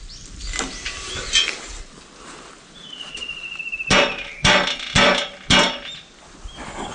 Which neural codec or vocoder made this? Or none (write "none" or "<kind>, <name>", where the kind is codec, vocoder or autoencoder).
none